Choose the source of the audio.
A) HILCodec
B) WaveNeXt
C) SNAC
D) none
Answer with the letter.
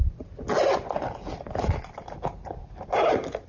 D